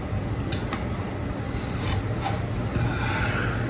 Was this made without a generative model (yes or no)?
yes